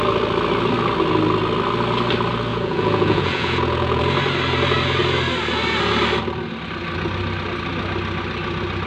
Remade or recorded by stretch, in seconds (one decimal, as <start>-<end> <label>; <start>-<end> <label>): 0.0-2.5 recorded; 2.5-4.0 remade; 4.0-8.9 recorded